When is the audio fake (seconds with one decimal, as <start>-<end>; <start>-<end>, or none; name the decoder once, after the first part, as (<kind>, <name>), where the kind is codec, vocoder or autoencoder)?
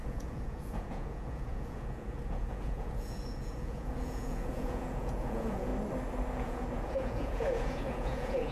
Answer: 0.0-5.7 (vocoder, Vocos); 6.3-8.5